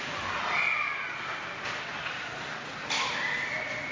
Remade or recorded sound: recorded